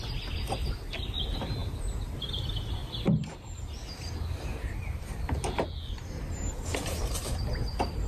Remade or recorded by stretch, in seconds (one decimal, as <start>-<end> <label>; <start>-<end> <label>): 0.0-8.1 recorded